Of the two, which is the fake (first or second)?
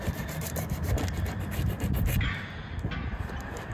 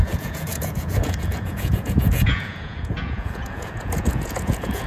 second